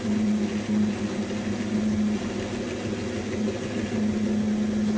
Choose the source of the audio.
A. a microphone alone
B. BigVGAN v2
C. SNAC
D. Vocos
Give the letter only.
A